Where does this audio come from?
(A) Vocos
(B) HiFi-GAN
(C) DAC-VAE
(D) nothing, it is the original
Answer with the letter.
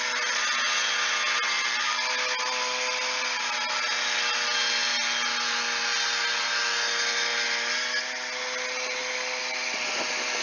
D